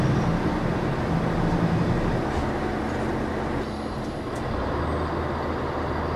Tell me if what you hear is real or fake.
real